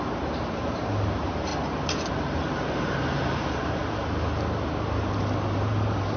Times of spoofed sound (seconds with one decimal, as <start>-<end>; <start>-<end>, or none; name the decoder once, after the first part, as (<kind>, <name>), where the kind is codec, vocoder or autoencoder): 0.0-1.5 (vocoder, BigVGAN v2); 2.1-3.8; 5.0-6.2